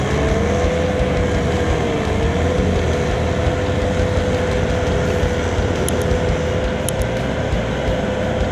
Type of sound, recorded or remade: recorded